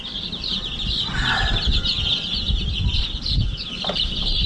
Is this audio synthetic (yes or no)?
no